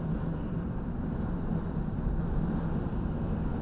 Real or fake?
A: real